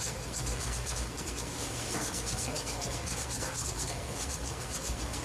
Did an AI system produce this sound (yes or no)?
yes